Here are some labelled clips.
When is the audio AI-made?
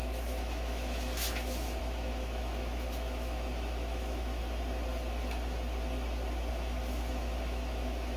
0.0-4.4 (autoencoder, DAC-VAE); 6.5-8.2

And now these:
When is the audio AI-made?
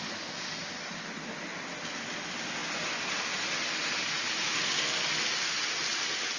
none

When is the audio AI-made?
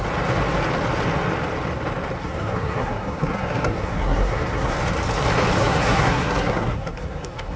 2.2-4.8 (codec, SNAC); 5.6-7.6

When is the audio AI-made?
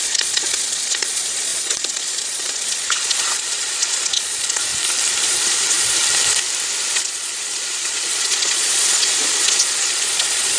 0.0-4.7 (vocoder, Vocos); 5.2-6.0; 6.9-10.6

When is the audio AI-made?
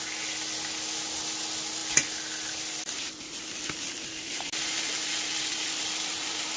none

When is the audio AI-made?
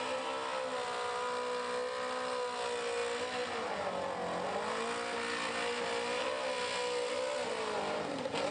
none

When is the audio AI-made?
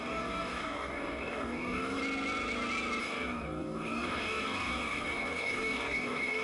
0.0-2.0 (codec, DAC); 3.0-6.4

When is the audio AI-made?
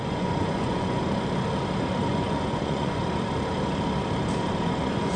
0.0-1.0 (vocoder, Vocos); 2.1-3.0; 4.6-5.2